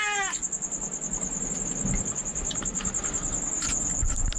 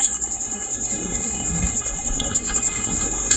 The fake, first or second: second